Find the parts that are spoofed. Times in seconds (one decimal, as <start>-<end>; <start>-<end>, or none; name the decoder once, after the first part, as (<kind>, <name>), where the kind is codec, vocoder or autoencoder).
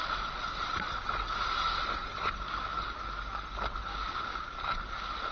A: none